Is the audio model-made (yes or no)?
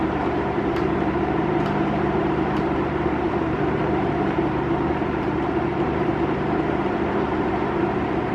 yes